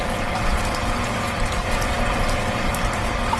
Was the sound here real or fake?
fake